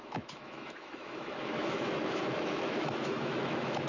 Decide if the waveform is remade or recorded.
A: remade